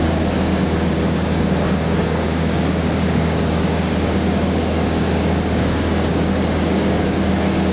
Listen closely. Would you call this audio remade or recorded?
remade